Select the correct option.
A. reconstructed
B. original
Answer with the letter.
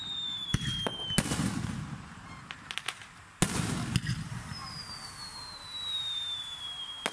B